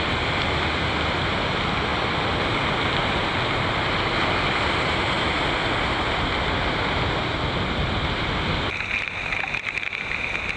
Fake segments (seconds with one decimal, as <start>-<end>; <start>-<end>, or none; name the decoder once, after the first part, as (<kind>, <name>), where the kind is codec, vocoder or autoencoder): 1.9-2.7 (vocoder, BigVGAN v2)